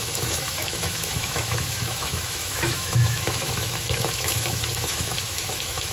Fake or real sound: fake